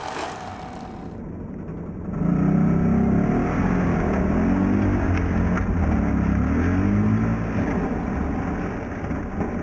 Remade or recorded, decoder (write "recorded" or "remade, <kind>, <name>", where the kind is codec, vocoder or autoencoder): recorded